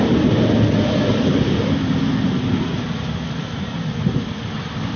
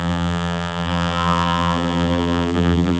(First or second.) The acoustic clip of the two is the first